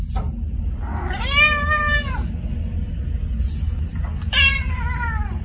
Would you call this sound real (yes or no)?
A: yes